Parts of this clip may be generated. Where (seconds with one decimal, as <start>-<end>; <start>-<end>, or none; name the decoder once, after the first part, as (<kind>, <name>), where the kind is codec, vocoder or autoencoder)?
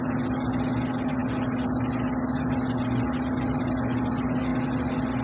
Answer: none